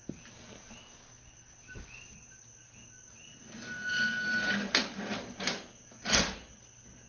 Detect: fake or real real